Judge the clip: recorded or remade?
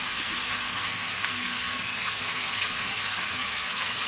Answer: remade